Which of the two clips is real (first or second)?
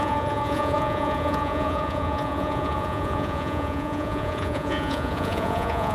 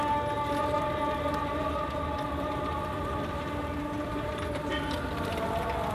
second